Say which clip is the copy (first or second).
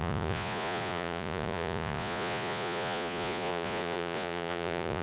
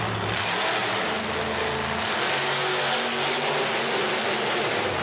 first